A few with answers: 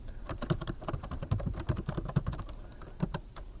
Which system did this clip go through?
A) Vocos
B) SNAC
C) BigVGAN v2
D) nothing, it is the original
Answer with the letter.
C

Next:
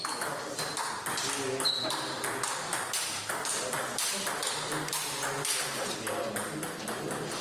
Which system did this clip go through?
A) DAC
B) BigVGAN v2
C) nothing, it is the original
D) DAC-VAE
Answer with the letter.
C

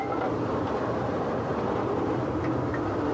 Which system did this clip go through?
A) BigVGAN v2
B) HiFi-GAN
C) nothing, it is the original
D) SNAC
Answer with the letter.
C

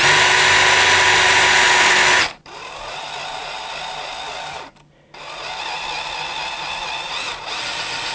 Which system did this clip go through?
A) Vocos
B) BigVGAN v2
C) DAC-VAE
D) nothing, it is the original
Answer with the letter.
D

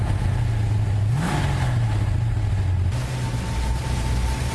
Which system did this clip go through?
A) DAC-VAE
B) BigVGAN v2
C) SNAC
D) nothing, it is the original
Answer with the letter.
D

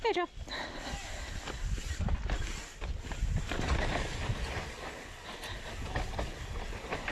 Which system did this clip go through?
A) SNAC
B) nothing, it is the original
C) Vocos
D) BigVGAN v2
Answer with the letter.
B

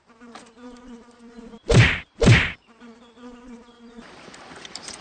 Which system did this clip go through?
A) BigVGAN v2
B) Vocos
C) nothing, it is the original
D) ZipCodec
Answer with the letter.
A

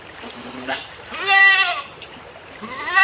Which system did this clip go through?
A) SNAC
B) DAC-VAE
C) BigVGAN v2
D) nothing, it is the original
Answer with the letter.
C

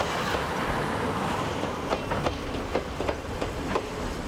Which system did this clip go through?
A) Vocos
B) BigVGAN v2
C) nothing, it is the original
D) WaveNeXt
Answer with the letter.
C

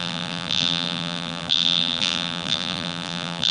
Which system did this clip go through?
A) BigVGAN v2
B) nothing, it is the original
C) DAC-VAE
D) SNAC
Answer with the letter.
A